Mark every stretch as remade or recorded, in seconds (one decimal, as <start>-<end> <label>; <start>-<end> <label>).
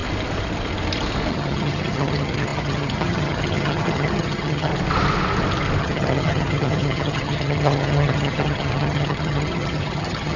0.0-1.3 recorded; 1.3-4.7 remade; 4.7-5.8 recorded; 5.8-10.4 remade